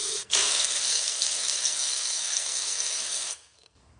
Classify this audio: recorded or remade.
remade